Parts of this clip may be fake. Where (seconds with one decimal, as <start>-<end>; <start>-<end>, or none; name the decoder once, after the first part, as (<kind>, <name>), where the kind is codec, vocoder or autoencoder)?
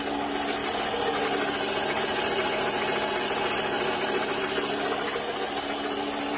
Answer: none